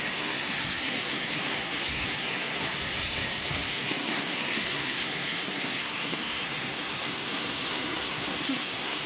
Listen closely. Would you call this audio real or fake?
fake